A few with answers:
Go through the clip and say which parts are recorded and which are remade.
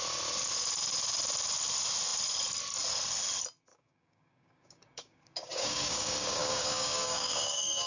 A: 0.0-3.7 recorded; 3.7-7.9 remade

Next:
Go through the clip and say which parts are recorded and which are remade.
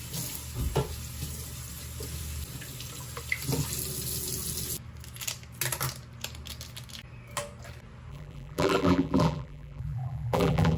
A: 0.0-8.1 recorded; 8.1-10.8 remade